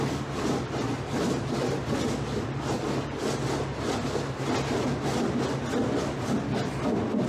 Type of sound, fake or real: real